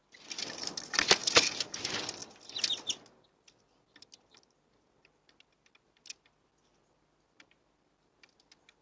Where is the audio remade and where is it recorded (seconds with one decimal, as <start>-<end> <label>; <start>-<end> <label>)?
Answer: 0.0-8.8 recorded